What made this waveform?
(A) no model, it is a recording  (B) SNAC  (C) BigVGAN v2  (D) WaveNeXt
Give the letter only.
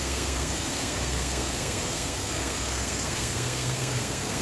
B